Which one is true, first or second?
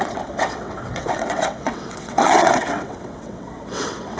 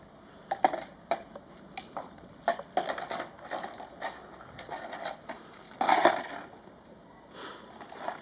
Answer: second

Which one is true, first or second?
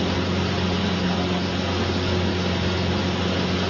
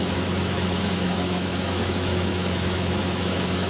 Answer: first